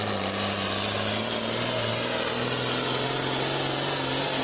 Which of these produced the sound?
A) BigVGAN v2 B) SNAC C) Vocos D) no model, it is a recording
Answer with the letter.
D